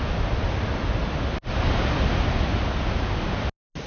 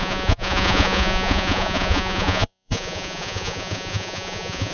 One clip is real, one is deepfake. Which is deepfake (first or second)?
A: second